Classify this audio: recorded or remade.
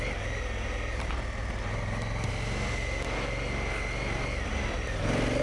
recorded